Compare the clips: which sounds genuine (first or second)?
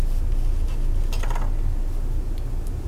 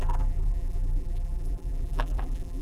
first